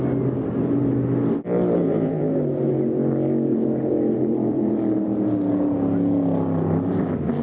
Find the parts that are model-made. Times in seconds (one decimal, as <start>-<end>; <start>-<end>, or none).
1.8-2.7; 3.5-4.7